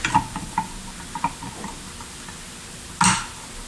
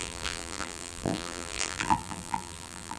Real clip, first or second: first